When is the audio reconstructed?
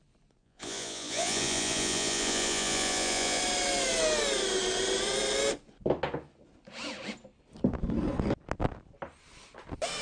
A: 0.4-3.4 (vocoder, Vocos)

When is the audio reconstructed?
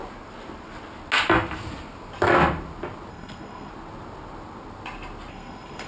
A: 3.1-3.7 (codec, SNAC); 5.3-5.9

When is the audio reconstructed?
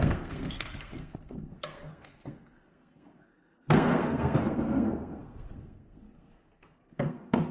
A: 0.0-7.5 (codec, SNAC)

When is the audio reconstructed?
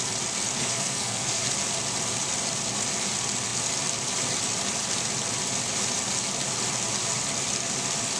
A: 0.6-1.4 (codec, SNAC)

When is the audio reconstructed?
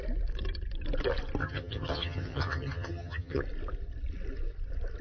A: 1.4-3.4 (vocoder, HiFi-GAN)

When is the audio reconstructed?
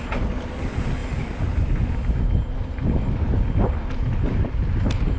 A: none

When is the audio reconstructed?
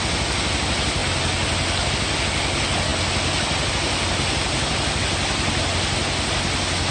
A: none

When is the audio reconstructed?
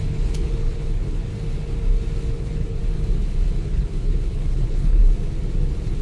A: 0.0-1.3 (codec, HILCodec); 2.3-2.8; 3.5-5.0